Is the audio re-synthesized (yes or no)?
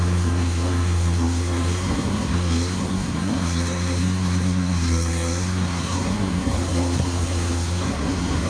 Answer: yes